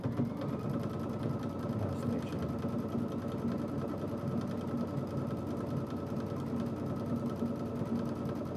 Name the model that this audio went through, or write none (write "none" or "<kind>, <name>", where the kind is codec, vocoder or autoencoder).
none